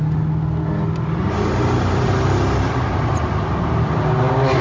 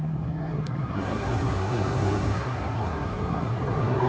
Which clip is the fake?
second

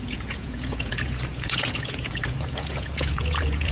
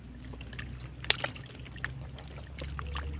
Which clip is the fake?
first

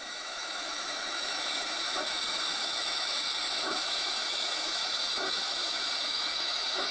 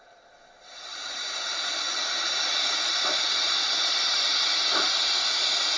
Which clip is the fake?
first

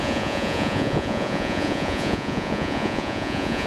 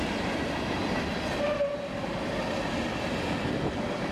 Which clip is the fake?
first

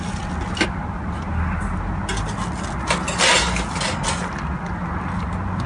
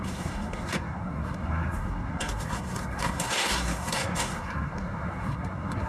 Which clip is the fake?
second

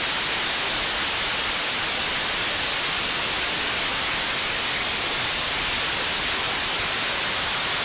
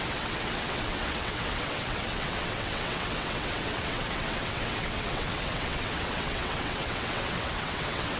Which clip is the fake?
second